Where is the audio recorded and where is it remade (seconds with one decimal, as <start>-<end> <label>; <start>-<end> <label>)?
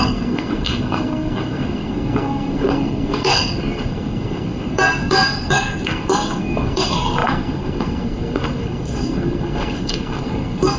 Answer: 0.0-10.8 remade